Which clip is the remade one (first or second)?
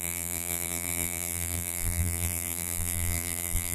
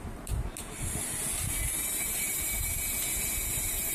first